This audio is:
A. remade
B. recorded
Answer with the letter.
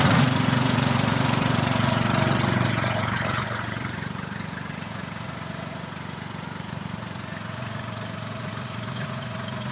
A